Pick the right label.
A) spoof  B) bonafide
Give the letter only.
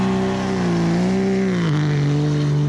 B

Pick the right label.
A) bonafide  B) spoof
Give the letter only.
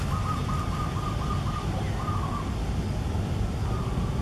A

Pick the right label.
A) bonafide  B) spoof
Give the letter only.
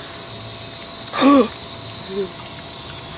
A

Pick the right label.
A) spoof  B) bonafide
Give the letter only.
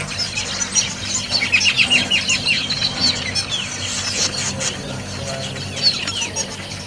B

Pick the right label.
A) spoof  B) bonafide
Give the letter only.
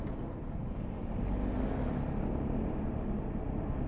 B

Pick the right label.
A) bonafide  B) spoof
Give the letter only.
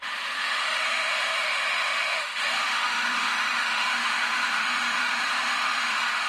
B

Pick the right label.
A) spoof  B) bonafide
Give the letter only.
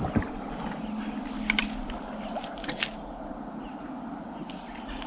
B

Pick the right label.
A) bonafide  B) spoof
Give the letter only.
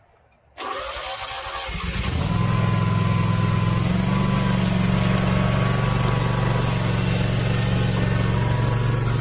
A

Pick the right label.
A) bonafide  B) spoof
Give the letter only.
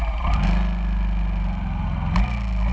A